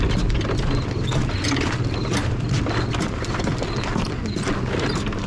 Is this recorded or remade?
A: recorded